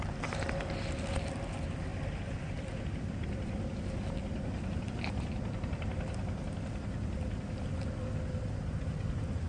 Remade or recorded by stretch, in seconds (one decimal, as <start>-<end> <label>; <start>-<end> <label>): 0.0-9.5 recorded

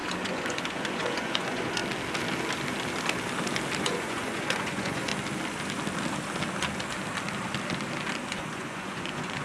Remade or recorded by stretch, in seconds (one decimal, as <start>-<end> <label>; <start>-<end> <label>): 0.0-1.8 remade; 1.8-3.8 recorded; 3.8-5.1 remade; 5.1-8.3 recorded; 8.3-9.4 remade

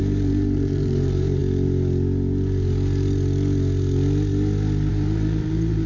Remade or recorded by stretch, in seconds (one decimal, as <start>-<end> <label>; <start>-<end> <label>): 0.0-1.4 remade; 1.4-4.9 recorded; 4.9-5.9 remade

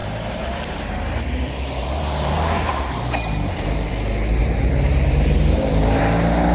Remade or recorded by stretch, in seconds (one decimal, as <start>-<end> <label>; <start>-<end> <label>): 0.0-3.9 remade; 3.9-4.4 recorded; 4.4-6.0 remade; 6.0-6.5 recorded

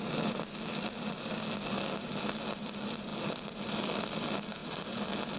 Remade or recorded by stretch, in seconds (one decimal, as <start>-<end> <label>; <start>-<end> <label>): 0.0-5.4 recorded

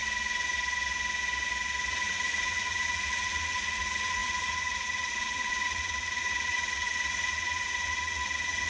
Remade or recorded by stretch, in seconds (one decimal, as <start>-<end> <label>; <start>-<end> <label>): 0.0-1.9 recorded; 1.9-8.7 remade